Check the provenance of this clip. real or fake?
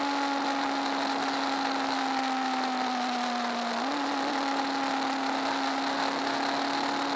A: real